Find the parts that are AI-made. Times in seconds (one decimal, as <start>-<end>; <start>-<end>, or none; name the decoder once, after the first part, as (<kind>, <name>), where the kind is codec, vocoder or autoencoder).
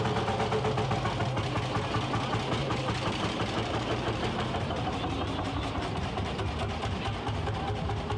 2.6-6.4 (vocoder, BigVGAN v2)